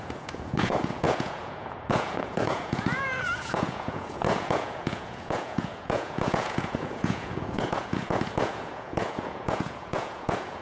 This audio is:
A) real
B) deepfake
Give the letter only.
B